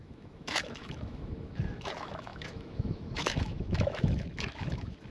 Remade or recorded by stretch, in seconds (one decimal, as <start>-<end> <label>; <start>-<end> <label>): 0.0-5.1 remade